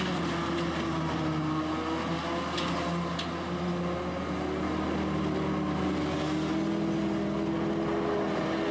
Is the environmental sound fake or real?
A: real